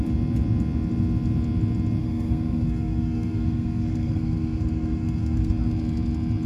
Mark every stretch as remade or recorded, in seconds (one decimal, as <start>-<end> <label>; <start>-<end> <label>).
0.0-2.0 recorded; 2.0-5.5 remade; 5.5-6.5 recorded